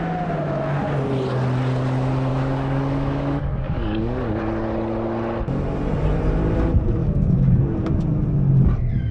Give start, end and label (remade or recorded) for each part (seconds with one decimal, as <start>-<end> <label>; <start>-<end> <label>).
0.0-2.3 recorded; 2.3-4.4 remade; 4.4-7.0 recorded; 7.0-7.6 remade; 7.6-9.1 recorded